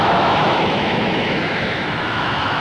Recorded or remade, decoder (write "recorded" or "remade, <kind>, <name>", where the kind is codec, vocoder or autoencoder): remade, autoencoder, DAC-VAE